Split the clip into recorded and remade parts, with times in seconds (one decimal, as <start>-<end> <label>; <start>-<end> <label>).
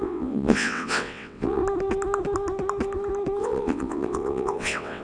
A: 0.0-1.6 remade; 1.6-3.4 recorded; 3.4-5.0 remade